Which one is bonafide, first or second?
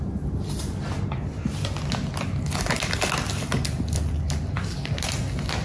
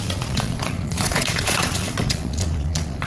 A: first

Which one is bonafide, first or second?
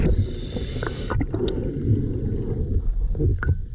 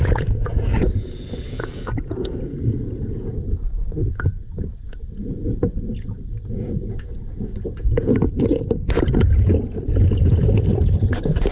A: first